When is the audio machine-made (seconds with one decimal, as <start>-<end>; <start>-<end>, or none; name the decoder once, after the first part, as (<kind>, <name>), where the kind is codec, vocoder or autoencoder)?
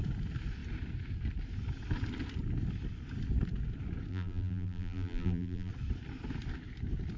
4.1-5.7 (vocoder, BigVGAN v2)